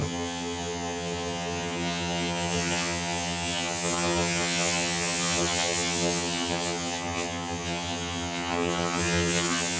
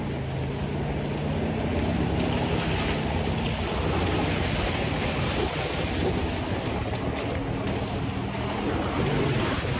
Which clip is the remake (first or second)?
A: first